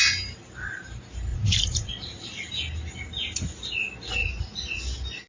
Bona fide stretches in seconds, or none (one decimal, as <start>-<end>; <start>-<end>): 0.0-1.3; 1.9-4.2; 4.8-5.3